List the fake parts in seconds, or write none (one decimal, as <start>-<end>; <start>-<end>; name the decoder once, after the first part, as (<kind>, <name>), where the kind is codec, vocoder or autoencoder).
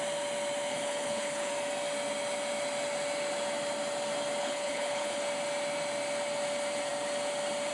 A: 0.7-1.5 (codec, HILCodec); 4.4-5.2